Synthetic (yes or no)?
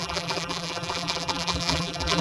yes